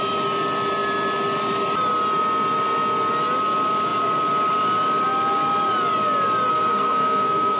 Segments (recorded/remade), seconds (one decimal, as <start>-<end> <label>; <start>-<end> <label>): 0.0-6.5 recorded; 6.5-7.6 remade